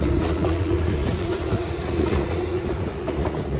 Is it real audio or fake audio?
fake